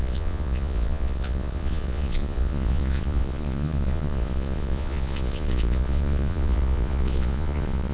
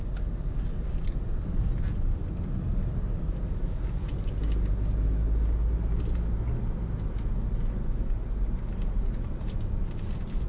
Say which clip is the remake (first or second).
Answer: first